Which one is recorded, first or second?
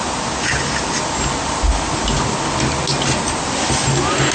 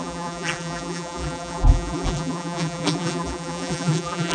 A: first